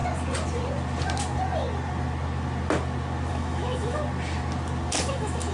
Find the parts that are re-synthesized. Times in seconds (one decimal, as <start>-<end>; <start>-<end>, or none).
3.3-4.0; 5.0-5.5